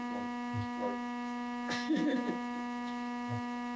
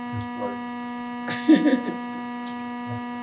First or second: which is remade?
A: first